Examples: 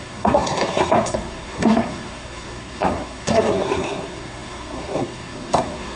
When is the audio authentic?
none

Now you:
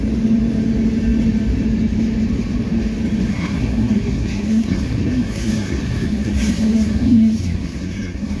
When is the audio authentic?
0.0-3.3

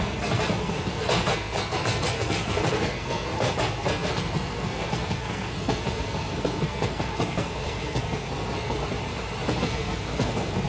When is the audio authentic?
8.8-9.6

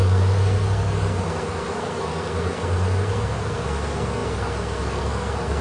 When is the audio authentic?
none

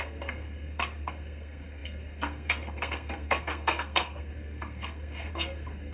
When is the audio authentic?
none

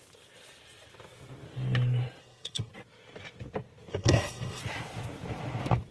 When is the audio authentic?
0.0-2.2; 2.7-3.9; 4.6-5.9

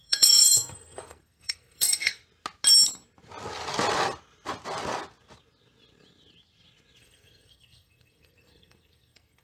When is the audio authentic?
2.2-7.0

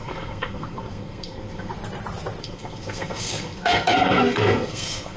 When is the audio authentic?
1.7-2.4